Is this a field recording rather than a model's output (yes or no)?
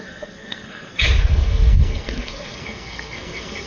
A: no